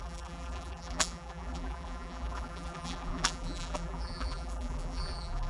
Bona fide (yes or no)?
no